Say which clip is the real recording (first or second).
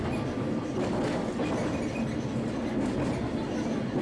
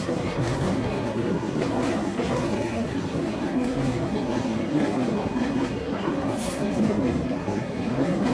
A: first